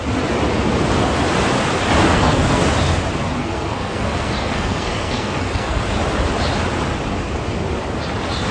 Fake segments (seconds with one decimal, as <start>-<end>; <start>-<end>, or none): 2.1-2.6; 3.4-5.8